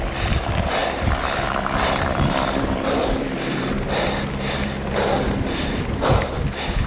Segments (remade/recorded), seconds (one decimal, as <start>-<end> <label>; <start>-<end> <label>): 0.0-0.8 recorded; 0.8-3.7 remade; 3.7-6.9 recorded

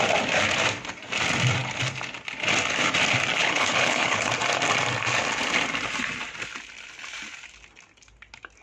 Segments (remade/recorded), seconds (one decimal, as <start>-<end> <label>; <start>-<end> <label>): 0.0-3.4 recorded; 3.4-4.3 remade; 4.3-8.6 recorded